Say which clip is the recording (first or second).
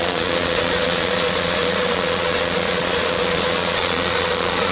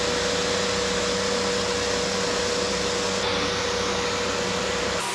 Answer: second